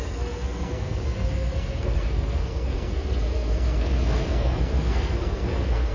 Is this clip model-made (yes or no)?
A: yes